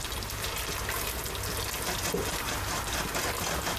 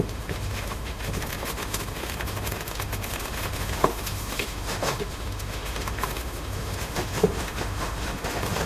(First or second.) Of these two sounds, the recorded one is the first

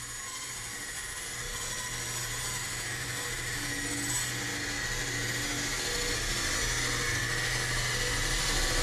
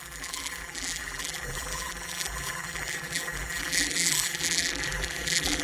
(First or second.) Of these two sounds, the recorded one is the first